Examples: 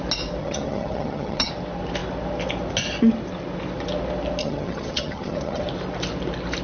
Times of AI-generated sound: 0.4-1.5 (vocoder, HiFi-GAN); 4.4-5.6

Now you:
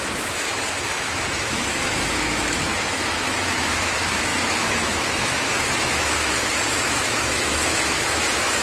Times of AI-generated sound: 0.0-8.6 (autoencoder, DAC-VAE)

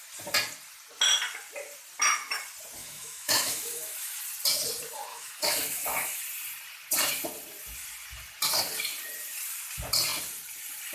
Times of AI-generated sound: 2.8-4.2 (autoencoder, DAC-VAE); 5.1-6.2

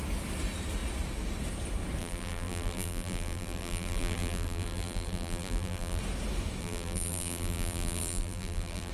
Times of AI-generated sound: 2.0-6.0 (vocoder, BigVGAN v2); 6.6-8.9